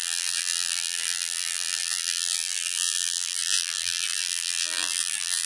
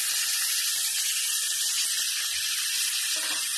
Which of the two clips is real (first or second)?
second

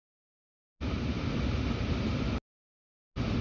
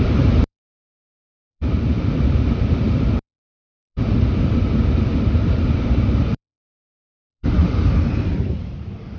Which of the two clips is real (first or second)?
first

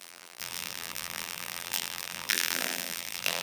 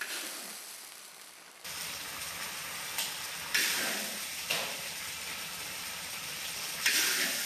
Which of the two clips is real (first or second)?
second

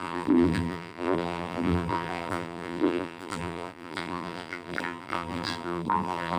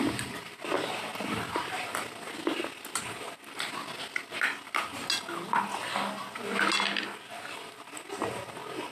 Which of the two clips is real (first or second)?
second